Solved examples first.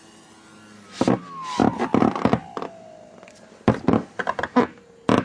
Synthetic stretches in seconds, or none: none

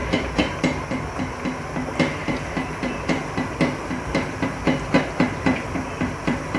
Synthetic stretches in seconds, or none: 0.0-0.6 (vocoder, BigVGAN v2); 2.2-6.6